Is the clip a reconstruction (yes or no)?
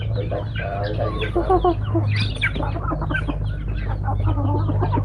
no